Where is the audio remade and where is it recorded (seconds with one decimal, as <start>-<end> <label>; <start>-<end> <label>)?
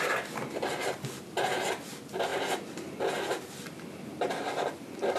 0.0-5.2 recorded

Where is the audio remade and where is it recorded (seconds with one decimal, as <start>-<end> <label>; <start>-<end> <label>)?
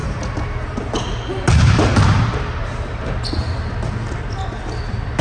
0.0-1.0 remade; 1.0-5.2 recorded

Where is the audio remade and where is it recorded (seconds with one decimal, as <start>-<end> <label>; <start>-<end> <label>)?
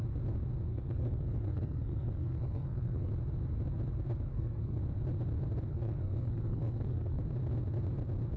0.0-0.7 recorded; 0.7-3.1 remade; 3.1-4.3 recorded; 4.3-4.8 remade; 4.8-5.7 recorded; 5.7-7.2 remade; 7.2-8.4 recorded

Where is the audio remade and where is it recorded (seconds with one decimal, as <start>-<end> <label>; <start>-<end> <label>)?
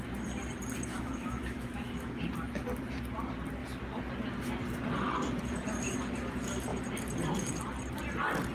0.0-0.9 recorded; 0.9-2.2 remade; 2.2-8.5 recorded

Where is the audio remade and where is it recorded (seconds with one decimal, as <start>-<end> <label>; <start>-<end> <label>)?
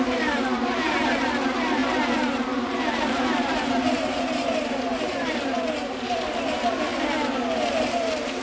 0.0-6.9 remade; 6.9-7.7 recorded; 7.7-8.4 remade